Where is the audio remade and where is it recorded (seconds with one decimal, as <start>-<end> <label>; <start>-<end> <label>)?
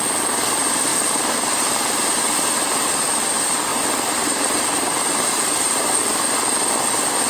0.0-0.9 recorded; 0.9-2.2 remade; 2.2-3.7 recorded; 3.7-6.0 remade; 6.0-7.3 recorded